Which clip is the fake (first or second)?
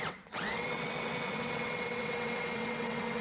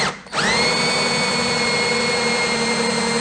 first